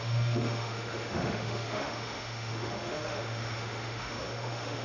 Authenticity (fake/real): fake